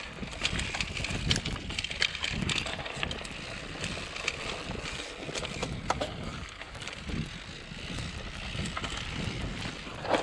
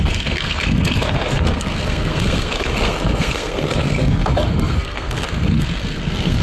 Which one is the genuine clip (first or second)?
first